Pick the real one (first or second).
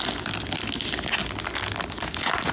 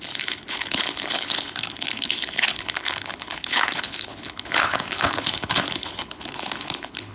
first